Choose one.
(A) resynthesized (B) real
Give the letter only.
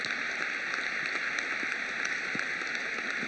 B